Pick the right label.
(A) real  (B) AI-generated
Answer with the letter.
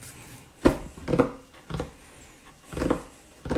A